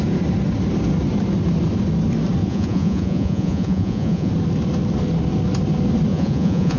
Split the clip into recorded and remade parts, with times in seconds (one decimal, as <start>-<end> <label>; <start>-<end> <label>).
0.0-2.4 recorded; 2.4-4.3 remade; 4.3-6.1 recorded; 6.1-6.8 remade